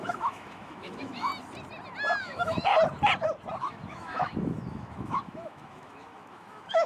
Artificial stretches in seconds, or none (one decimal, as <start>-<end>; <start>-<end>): 0.0-1.3; 2.2-2.7; 3.7-6.9